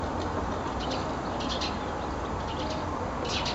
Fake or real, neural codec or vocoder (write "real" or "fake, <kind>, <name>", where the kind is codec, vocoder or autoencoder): real